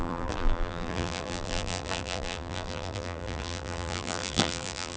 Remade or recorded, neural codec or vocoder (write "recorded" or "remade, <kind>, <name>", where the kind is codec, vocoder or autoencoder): remade, vocoder, BigVGAN v2